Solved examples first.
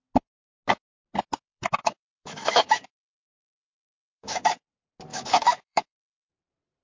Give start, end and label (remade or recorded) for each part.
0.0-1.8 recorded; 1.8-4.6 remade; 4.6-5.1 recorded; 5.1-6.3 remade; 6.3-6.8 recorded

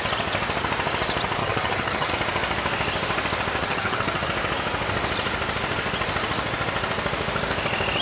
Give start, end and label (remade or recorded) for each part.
0.0-1.4 recorded; 1.4-2.1 remade; 2.1-3.6 recorded; 3.6-4.3 remade; 4.3-8.0 recorded

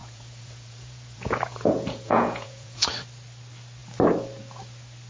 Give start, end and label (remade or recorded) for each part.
0.0-2.9 remade; 2.9-5.1 recorded